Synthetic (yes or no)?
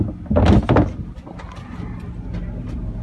no